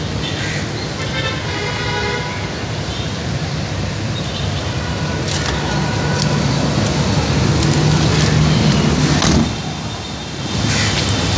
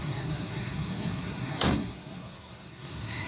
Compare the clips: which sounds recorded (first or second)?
first